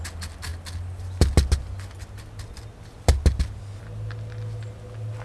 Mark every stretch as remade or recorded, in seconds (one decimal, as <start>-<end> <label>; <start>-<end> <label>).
0.0-5.2 recorded